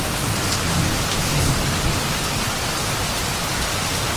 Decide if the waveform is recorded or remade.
recorded